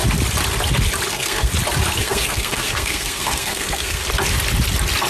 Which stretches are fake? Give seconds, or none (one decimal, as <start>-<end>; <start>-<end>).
1.1-1.5; 2.0-4.0